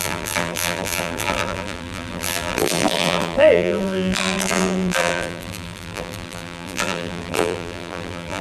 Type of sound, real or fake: fake